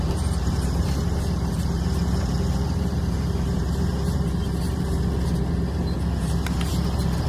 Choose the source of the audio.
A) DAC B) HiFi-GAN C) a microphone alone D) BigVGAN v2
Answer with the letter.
D